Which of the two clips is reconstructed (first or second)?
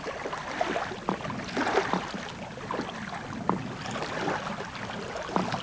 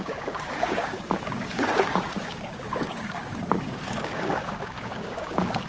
second